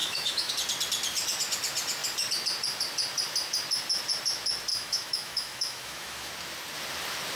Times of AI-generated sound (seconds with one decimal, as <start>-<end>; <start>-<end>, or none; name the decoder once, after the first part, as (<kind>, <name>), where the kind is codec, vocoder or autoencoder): 0.0-0.5 (autoencoder, DAC-VAE); 4.7-6.3

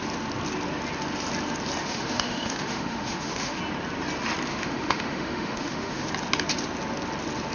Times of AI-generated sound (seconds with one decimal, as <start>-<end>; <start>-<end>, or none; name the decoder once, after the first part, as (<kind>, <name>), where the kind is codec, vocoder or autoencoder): 1.8-3.6 (autoencoder, DAC-VAE); 4.5-6.1

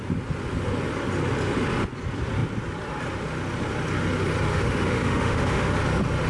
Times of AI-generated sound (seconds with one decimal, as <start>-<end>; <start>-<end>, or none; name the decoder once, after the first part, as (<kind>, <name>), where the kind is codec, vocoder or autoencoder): 4.5-5.7 (autoencoder, DAC-VAE)

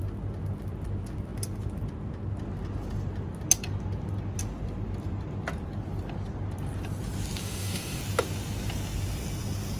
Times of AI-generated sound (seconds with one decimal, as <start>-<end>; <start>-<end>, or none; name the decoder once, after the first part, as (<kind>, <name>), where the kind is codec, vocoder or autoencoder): 7.4-8.0 (autoencoder, DAC-VAE)

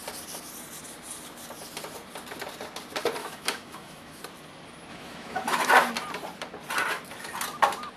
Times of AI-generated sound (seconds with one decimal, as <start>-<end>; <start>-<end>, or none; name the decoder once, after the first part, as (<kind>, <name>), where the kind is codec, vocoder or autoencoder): 3.2-4.2 (autoencoder, DAC-VAE); 4.9-5.7

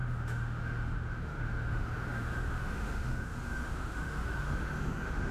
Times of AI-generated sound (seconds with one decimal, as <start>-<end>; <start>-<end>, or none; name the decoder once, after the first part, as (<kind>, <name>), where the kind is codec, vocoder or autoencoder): 0.0-5.3 (autoencoder, DAC-VAE)

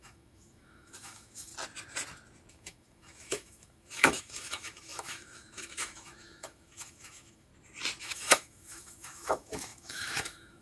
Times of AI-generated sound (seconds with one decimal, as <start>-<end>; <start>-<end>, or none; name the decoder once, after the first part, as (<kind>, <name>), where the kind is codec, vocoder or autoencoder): 0.0-1.5 (autoencoder, DAC-VAE); 2.5-7.5; 8.0-10.6